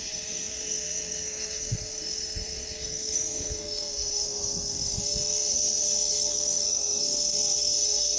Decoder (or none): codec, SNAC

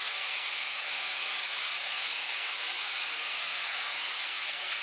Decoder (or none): codec, SNAC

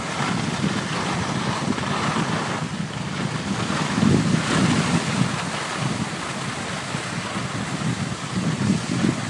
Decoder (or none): none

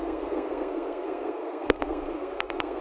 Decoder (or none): codec, SNAC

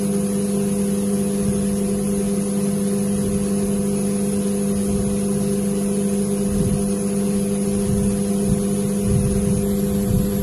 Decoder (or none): none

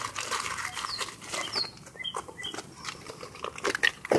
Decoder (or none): none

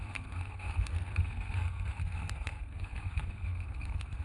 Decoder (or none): codec, SNAC